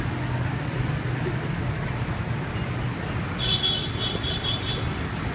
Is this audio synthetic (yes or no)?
no